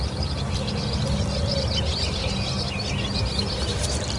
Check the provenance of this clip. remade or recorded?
recorded